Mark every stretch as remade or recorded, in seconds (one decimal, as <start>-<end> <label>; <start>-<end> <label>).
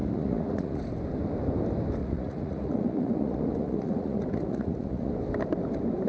0.0-0.8 remade; 0.8-2.0 recorded; 2.0-5.1 remade; 5.1-6.1 recorded